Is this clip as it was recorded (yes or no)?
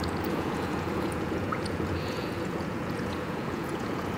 no